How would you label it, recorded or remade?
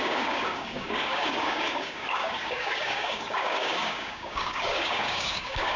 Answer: remade